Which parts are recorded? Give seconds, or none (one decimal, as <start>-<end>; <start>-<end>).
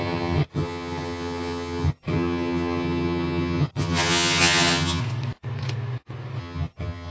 5.0-6.4